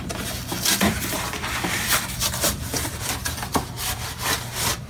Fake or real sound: fake